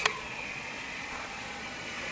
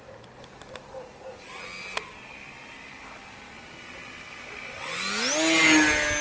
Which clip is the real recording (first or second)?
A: second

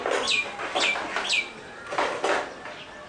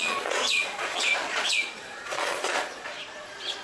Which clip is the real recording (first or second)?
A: first